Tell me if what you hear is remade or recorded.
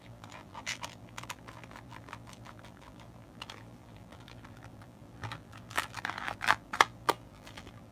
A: remade